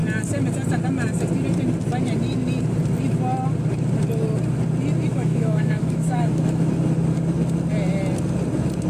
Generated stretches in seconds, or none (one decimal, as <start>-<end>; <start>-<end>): 5.1-6.7